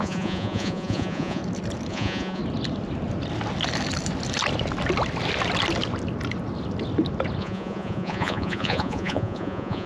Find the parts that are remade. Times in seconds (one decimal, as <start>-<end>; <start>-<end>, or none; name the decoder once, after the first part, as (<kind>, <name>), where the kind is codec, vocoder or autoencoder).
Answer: 0.0-1.4 (vocoder, Vocos); 1.9-2.4; 7.4-9.9